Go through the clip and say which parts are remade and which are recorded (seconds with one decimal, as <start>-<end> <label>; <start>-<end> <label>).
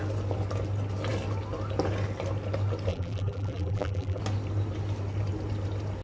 0.0-2.9 recorded; 2.9-4.2 remade; 4.2-6.0 recorded